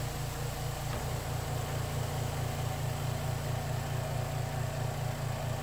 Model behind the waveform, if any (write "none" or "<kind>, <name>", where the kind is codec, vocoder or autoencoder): none